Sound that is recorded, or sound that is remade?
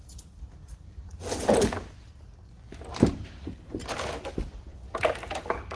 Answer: recorded